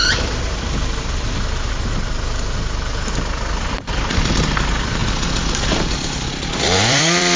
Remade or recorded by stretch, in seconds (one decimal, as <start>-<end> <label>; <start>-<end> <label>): 0.0-5.0 remade; 5.0-5.9 recorded; 5.9-7.4 remade